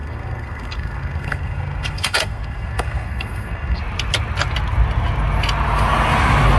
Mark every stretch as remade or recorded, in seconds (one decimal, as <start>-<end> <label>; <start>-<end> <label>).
0.0-3.8 remade; 3.8-6.6 recorded